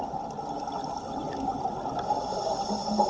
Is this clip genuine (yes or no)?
yes